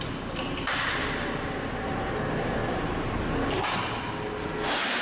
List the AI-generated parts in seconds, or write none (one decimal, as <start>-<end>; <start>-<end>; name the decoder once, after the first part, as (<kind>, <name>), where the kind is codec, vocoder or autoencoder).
1.0-2.1 (vocoder, BigVGAN v2); 2.6-3.1